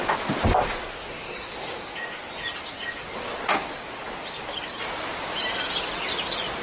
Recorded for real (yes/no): yes